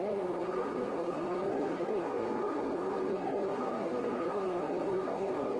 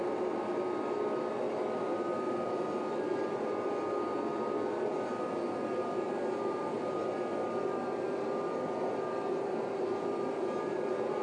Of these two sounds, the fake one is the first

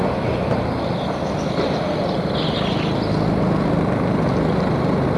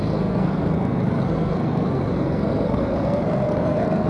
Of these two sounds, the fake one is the second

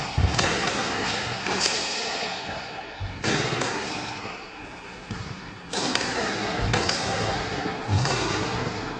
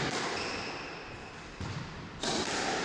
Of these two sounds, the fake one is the first